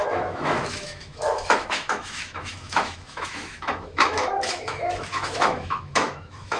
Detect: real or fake fake